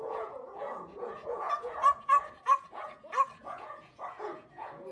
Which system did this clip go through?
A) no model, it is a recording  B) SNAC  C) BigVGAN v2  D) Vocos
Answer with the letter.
D